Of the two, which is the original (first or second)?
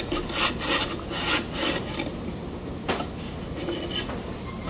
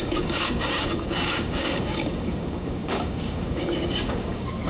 first